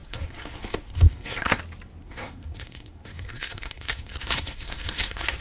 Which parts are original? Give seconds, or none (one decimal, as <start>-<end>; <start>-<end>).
1.6-2.0